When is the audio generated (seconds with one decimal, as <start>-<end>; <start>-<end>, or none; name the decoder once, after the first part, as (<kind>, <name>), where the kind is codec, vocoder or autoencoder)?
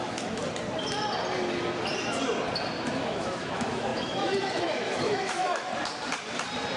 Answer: 0.0-0.4 (autoencoder, DAC-VAE); 2.9-5.7